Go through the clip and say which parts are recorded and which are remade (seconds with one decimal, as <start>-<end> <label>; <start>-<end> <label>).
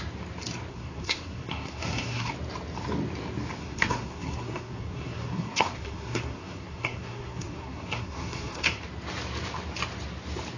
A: 0.0-0.7 recorded; 0.7-2.3 remade; 2.3-3.6 recorded; 3.6-8.8 remade; 8.8-10.6 recorded